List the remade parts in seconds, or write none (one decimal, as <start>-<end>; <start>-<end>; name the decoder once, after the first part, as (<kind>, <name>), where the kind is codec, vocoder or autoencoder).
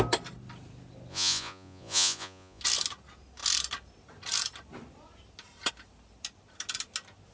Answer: 1.1-2.6 (vocoder, Vocos)